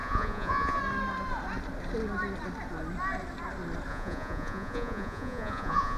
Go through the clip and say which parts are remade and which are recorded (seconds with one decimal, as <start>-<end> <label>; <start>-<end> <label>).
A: 0.0-0.8 remade; 0.8-3.9 recorded; 3.9-6.0 remade